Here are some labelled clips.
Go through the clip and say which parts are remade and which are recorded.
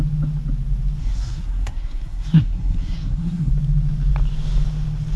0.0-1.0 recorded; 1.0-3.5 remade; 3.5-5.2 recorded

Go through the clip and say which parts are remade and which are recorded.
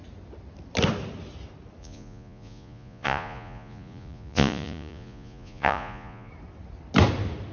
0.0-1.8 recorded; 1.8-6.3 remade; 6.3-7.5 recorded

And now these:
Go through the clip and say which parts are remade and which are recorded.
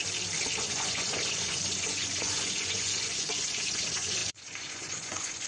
0.0-0.6 recorded; 0.6-5.5 remade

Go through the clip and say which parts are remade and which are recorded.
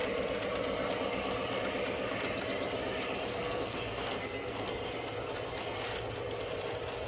0.0-3.3 recorded; 3.3-4.7 remade; 4.7-7.1 recorded